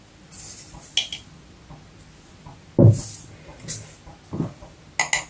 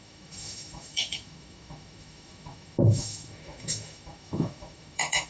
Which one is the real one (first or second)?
first